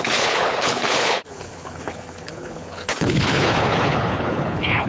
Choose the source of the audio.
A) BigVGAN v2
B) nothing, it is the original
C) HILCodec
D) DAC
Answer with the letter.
C